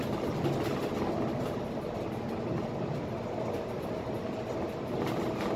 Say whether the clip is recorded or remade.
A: recorded